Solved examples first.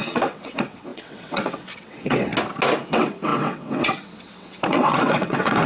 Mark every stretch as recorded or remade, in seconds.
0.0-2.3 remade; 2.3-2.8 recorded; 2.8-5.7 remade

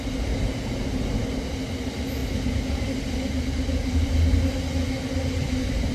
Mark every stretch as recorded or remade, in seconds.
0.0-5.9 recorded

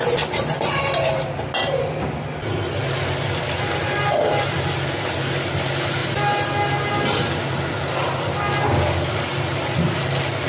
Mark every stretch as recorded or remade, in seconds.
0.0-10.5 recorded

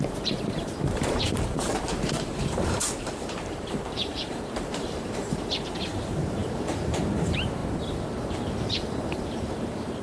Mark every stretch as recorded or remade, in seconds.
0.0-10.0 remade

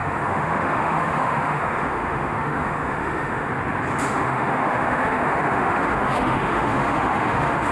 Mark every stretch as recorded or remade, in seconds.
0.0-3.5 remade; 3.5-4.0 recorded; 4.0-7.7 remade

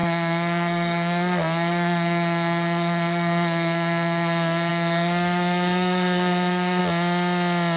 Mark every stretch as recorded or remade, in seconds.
0.0-6.8 remade; 6.8-7.8 recorded